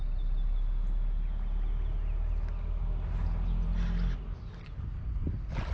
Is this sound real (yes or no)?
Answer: yes